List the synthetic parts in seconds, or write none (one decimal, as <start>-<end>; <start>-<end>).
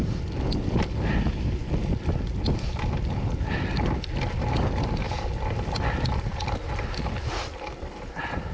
none